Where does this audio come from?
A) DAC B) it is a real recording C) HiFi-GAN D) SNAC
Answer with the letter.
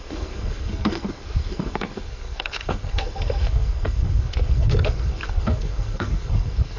D